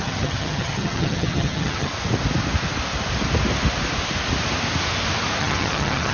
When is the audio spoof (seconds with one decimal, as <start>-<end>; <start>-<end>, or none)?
0.0-1.9; 5.4-6.1